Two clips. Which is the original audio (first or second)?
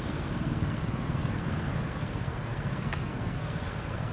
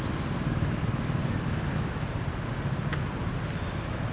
second